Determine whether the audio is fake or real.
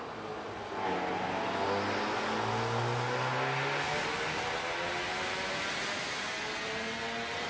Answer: real